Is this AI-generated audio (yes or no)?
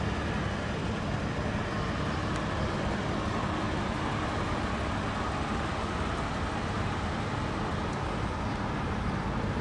no